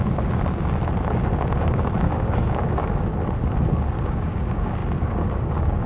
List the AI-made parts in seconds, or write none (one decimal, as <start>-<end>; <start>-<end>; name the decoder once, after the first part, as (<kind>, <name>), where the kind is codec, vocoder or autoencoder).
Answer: 0.0-0.8 (codec, DAC); 1.6-3.1; 3.7-5.9